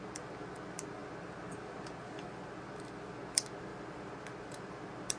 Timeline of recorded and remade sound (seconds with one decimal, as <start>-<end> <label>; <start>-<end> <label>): 0.0-5.2 recorded